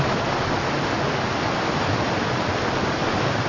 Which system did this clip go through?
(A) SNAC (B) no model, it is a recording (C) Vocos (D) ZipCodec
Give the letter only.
B